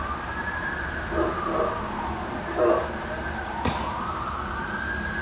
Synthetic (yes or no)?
no